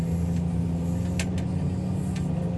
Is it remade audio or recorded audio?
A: recorded